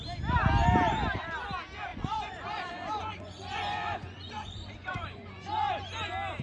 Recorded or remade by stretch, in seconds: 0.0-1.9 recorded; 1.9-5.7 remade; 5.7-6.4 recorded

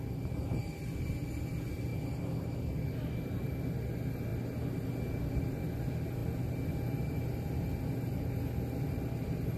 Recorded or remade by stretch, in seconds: 0.0-9.6 recorded

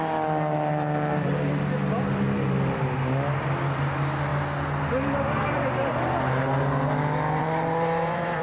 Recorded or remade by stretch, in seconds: 0.0-7.4 recorded; 7.4-8.4 remade

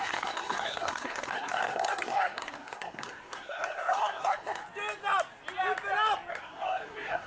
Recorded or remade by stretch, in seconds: 0.0-4.6 remade; 4.6-6.3 recorded; 6.3-7.3 remade

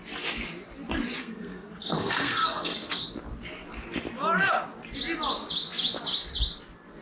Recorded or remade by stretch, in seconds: 0.0-1.2 recorded; 1.2-2.9 remade; 2.9-7.0 recorded